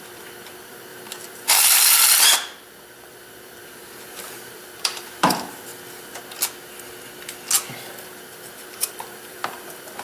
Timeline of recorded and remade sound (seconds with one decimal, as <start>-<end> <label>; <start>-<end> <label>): 0.0-5.7 remade; 5.7-7.9 recorded; 7.9-10.0 remade